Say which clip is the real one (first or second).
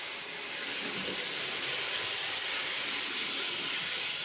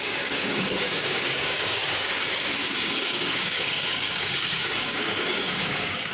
first